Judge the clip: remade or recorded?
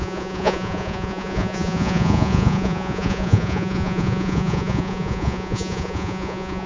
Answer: remade